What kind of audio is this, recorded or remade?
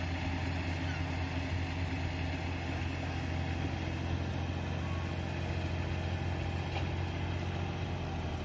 recorded